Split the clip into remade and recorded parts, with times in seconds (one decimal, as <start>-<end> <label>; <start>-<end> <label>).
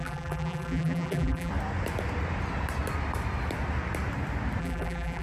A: 0.0-1.5 remade; 1.5-4.6 recorded; 4.6-5.2 remade